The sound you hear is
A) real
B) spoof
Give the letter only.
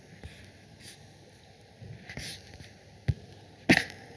A